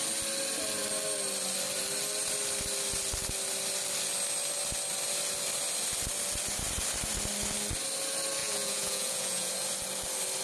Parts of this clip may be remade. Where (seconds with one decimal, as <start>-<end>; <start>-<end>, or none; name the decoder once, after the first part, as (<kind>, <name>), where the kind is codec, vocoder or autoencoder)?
8.4-9.5 (vocoder, Vocos)